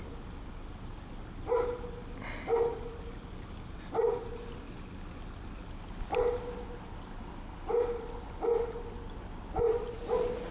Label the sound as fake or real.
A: real